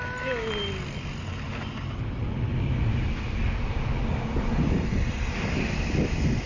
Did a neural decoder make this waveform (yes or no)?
no